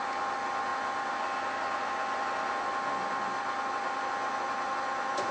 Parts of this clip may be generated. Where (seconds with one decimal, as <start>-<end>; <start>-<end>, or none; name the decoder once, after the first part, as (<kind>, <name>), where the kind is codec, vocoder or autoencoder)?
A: none